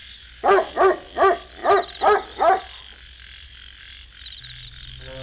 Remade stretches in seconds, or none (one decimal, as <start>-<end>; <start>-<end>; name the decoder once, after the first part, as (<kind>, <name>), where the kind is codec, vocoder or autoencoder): 0.0-0.7 (vocoder, Vocos)